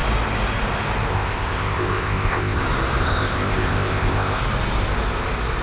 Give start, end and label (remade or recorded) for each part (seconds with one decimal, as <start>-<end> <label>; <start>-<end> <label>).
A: 0.0-1.1 recorded; 1.1-2.6 remade; 2.6-3.0 recorded; 3.0-4.4 remade; 4.4-5.6 recorded